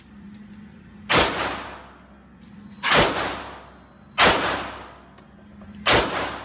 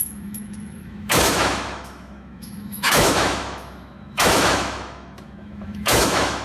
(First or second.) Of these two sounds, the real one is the first